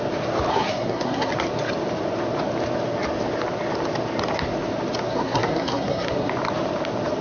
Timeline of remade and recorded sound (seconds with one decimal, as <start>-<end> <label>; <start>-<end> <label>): 0.0-0.5 recorded; 0.5-1.3 remade; 1.3-5.1 recorded; 5.1-6.3 remade; 6.3-7.2 recorded

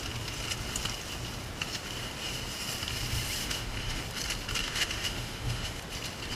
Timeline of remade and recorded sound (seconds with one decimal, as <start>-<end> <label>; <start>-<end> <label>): 0.0-3.4 recorded; 3.4-4.0 remade; 4.0-4.6 recorded; 4.6-5.8 remade; 5.8-6.4 recorded

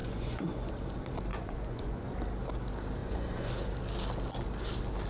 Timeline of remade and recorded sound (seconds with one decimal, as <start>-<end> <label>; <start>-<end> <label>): 0.0-0.7 remade; 0.7-1.3 recorded; 1.3-2.1 remade; 2.1-3.0 recorded; 3.0-3.5 remade; 3.5-5.1 recorded

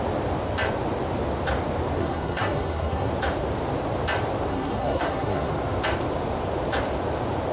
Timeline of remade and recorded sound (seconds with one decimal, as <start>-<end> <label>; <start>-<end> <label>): 0.0-2.0 recorded; 2.0-3.1 remade; 3.1-4.5 recorded; 4.5-5.5 remade; 5.5-7.5 recorded